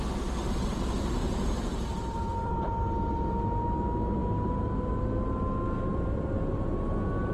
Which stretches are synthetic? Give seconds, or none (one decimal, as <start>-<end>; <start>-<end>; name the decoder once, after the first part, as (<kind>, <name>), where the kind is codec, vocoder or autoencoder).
0.4-3.1 (vocoder, BigVGAN v2); 5.9-6.7